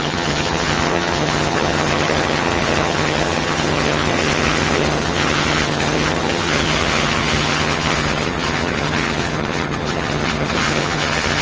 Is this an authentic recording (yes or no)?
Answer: no